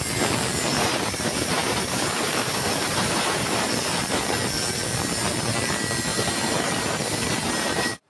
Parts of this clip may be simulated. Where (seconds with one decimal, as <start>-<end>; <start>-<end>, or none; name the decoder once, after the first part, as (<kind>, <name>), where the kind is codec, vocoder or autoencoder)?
0.7-3.7 (vocoder, BigVGAN v2); 6.1-8.1